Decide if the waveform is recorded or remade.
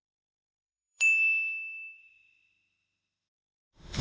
remade